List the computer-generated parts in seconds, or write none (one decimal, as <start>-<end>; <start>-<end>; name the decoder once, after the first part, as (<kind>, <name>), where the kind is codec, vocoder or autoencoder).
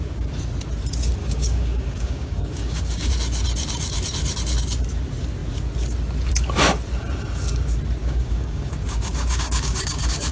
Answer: 1.2-3.1 (codec, DAC); 8.0-10.3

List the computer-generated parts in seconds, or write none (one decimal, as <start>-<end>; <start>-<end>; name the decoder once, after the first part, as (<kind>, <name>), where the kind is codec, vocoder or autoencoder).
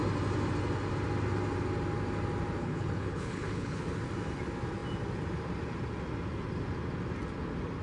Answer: 2.6-3.8 (codec, HILCodec)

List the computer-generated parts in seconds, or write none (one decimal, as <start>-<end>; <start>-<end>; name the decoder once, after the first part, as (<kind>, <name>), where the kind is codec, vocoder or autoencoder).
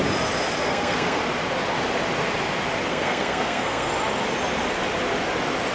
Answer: 0.7-1.2 (codec, SNAC); 2.9-3.9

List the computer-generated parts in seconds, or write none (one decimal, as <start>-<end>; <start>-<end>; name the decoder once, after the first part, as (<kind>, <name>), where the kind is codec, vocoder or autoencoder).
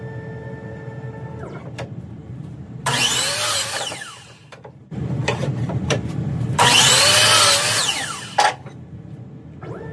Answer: 2.2-7.2 (vocoder, BigVGAN v2)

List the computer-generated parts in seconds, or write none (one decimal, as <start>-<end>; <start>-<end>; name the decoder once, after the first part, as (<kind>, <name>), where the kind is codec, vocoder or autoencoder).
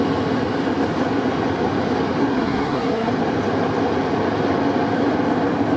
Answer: 2.2-3.1 (codec, SNAC)